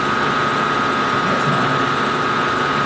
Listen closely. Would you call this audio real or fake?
real